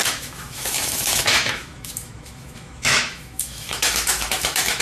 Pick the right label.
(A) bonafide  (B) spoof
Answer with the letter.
B